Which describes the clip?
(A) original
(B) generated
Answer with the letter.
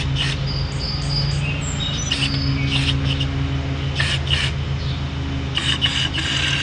A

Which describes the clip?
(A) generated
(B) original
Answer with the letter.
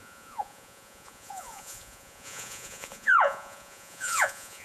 A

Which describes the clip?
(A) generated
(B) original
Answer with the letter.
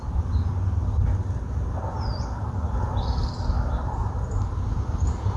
B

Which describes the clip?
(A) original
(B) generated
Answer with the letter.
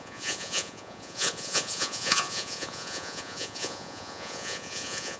B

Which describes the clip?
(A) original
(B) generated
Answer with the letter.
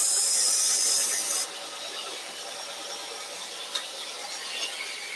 A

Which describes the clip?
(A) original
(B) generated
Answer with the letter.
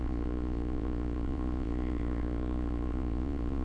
B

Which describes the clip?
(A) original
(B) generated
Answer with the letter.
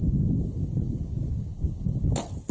A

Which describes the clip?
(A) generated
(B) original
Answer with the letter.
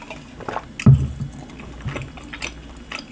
B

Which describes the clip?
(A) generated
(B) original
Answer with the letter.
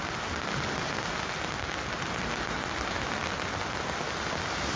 B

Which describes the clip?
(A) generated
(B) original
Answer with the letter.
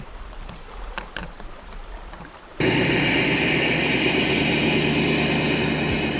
B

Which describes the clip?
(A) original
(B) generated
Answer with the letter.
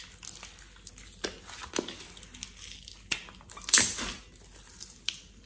A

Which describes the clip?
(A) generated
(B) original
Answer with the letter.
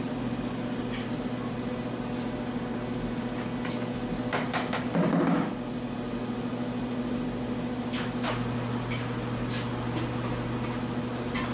B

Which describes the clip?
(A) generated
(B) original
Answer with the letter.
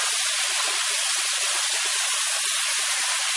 B